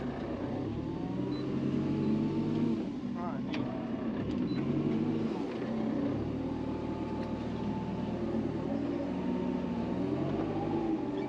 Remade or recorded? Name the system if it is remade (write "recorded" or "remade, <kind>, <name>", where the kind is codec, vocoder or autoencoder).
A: recorded